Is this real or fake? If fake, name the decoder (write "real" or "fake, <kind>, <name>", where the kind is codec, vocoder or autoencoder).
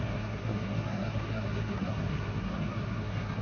fake, codec, SNAC